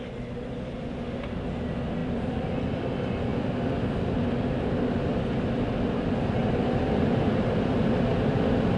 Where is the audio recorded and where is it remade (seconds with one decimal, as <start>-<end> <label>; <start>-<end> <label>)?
0.0-2.0 recorded; 2.0-2.8 remade; 2.8-6.4 recorded; 6.4-7.7 remade; 7.7-8.8 recorded